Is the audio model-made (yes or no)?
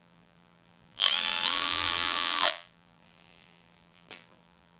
yes